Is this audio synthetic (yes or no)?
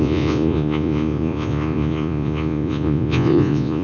yes